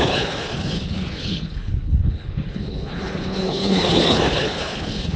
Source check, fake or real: fake